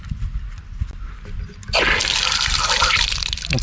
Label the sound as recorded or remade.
recorded